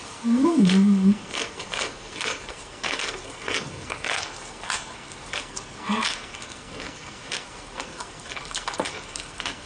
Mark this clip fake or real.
fake